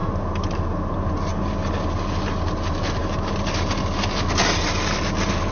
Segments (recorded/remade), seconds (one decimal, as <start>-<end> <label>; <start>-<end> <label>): 0.0-5.5 recorded